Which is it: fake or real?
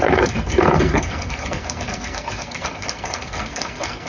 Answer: fake